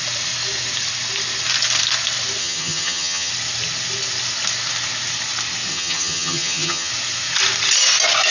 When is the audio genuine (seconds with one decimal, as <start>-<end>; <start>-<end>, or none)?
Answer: 0.0-2.4; 3.3-5.7; 6.9-8.3